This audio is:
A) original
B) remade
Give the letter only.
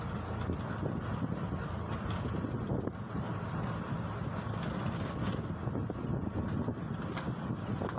A